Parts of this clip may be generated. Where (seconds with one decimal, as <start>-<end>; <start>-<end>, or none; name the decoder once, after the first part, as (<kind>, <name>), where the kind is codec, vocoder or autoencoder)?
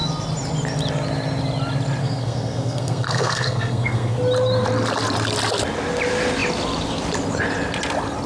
2.0-4.2 (codec, SNAC)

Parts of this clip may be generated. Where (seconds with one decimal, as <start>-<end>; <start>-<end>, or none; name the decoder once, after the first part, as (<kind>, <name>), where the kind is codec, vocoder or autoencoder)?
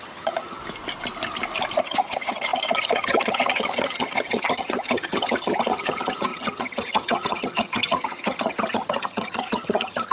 0.0-0.6 (vocoder, HiFi-GAN); 1.8-10.1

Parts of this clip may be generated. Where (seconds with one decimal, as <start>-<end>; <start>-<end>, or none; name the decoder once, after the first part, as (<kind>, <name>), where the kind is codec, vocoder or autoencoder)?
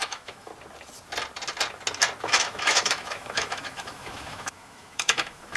0.0-0.5 (autoencoder, DAC-VAE); 2.2-5.6